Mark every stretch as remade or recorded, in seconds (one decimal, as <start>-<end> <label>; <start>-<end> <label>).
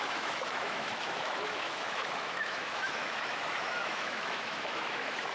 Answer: 0.0-5.3 remade